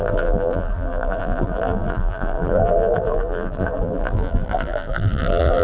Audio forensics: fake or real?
fake